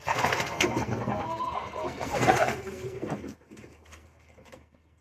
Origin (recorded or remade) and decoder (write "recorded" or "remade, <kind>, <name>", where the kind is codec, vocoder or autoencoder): remade, codec, SNAC